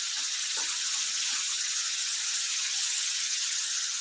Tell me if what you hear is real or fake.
fake